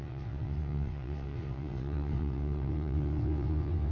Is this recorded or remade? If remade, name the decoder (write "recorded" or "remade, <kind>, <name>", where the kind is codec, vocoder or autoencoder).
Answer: remade, vocoder, WaveNeXt